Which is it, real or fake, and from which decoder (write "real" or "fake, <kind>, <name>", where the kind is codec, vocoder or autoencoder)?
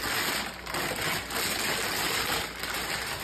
real